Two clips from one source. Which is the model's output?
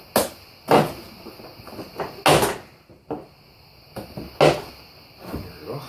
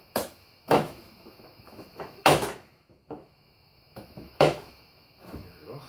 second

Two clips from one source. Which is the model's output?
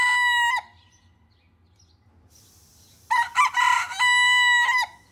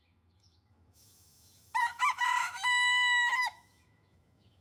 second